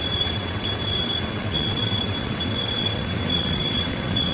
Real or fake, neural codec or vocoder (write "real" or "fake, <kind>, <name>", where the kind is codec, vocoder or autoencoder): fake, vocoder, WaveNeXt